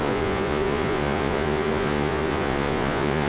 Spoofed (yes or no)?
yes